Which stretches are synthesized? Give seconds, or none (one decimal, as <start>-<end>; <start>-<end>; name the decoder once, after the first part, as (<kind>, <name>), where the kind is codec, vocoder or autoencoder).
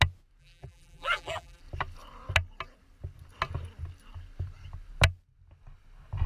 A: 0.4-1.6 (vocoder, BigVGAN v2)